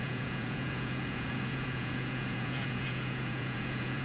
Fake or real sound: fake